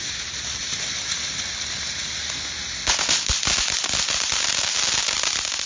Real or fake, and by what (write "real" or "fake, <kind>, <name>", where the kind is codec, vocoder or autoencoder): real